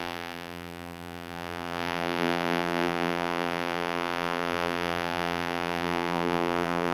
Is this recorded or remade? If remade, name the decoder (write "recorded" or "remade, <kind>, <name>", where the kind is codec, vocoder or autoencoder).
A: remade, vocoder, BigVGAN v2